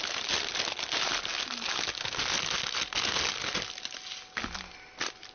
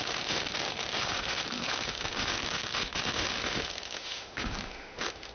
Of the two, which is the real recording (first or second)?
first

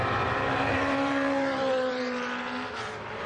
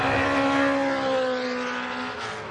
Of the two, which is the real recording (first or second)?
second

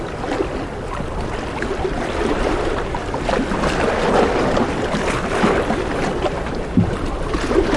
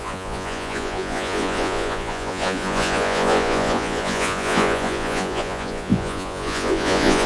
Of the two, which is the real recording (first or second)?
first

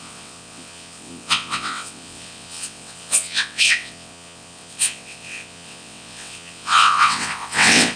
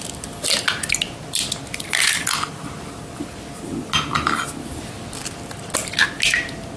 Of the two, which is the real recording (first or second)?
second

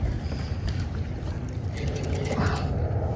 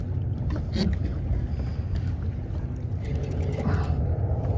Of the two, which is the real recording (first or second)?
second